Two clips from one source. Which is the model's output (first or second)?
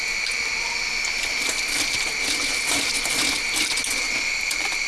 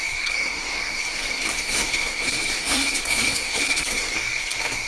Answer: second